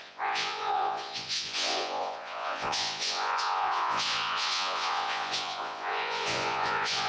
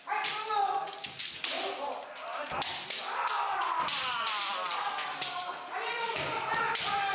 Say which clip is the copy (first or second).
first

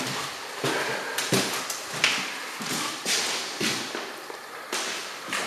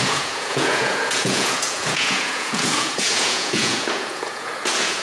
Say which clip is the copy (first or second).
second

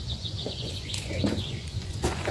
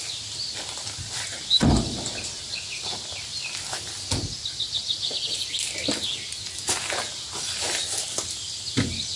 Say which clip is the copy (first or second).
first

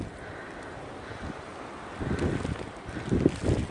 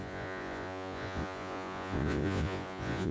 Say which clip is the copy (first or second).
second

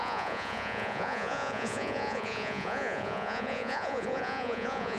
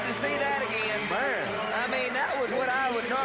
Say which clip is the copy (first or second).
first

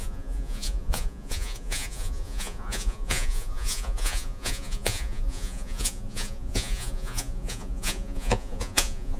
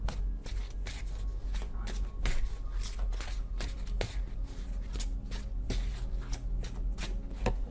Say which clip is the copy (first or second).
first